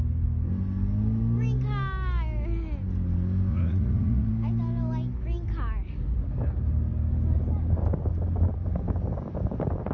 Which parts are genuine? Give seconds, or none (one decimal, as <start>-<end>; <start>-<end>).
0.0-3.5; 4.3-9.9